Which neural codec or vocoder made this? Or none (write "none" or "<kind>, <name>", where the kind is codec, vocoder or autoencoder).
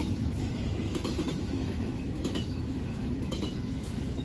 autoencoder, DAC-VAE